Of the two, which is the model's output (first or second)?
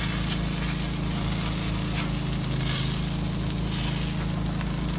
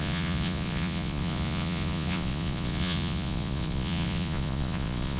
second